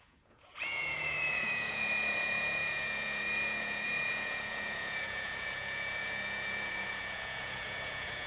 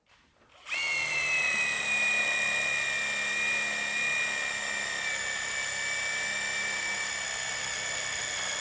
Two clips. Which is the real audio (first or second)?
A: second